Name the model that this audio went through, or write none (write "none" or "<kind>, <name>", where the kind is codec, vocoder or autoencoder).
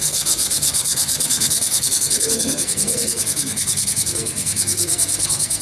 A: codec, SNAC